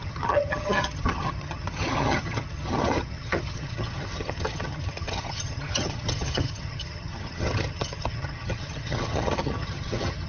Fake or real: fake